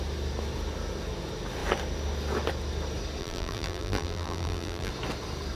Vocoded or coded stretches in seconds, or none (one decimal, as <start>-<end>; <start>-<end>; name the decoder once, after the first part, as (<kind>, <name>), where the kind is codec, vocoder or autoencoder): 3.2-4.9 (vocoder, BigVGAN v2)

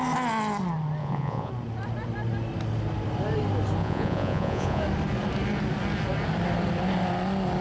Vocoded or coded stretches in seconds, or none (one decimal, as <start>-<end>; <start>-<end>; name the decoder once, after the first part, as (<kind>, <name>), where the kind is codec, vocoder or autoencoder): 1.0-1.5 (vocoder, Vocos); 3.8-4.8

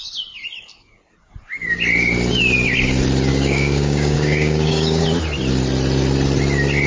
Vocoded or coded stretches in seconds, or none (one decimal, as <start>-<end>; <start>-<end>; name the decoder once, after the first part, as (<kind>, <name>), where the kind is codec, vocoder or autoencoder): 3.3-5.0 (codec, DAC)

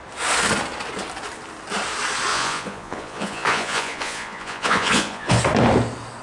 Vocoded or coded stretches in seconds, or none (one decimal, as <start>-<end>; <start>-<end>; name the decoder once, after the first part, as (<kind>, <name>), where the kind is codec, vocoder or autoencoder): 2.3-5.4 (vocoder, Vocos)